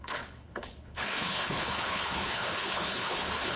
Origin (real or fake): fake